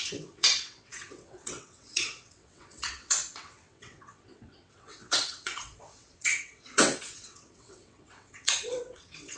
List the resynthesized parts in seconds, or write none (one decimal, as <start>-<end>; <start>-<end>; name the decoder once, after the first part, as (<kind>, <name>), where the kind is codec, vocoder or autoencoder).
0.0-9.4 (vocoder, WaveNeXt)